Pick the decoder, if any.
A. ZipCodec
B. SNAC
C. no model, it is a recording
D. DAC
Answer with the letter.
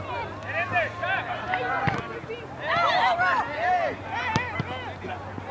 C